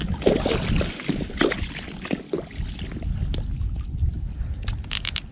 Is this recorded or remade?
recorded